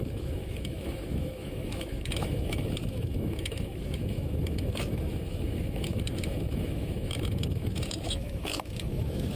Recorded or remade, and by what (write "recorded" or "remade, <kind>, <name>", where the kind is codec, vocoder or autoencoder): remade, autoencoder, DAC-VAE